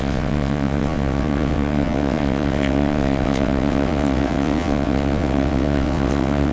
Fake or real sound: fake